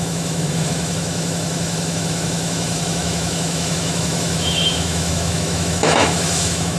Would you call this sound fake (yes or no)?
yes